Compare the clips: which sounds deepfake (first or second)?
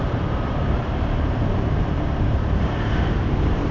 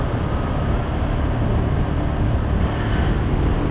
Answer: first